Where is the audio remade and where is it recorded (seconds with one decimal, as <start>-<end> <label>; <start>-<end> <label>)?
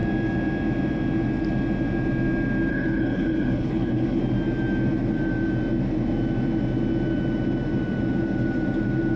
0.0-2.7 recorded; 2.7-4.2 remade; 4.2-9.2 recorded